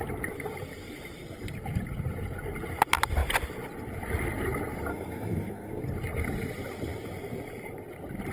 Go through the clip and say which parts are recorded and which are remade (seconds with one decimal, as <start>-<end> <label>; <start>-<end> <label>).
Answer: 0.0-4.9 recorded; 4.9-5.8 remade; 5.8-8.3 recorded

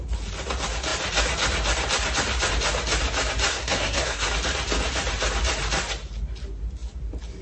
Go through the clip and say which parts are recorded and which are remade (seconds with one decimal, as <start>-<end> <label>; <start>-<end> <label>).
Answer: 0.0-3.5 recorded; 3.5-4.3 remade; 4.3-7.4 recorded

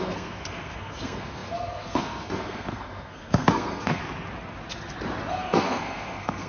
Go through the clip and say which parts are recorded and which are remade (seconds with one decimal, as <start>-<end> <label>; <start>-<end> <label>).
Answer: 0.0-4.0 remade; 4.0-5.3 recorded; 5.3-6.5 remade

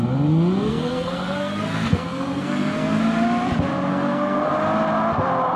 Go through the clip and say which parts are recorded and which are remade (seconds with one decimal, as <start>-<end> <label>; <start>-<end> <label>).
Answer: 0.0-0.7 recorded; 0.7-3.0 remade; 3.0-3.9 recorded; 3.9-4.5 remade; 4.5-5.6 recorded

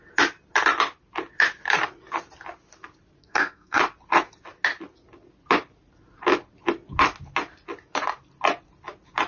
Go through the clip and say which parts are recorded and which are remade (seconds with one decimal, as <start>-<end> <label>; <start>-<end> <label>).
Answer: 0.0-3.2 recorded; 3.2-3.8 remade; 3.8-9.3 recorded